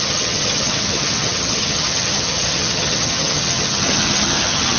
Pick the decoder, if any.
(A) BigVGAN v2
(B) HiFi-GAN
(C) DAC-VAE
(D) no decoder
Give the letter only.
B